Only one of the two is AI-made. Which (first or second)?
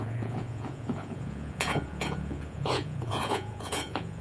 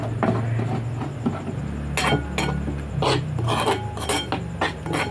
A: first